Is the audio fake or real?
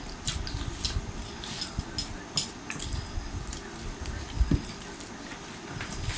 real